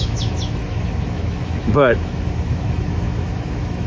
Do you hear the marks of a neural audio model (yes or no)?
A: yes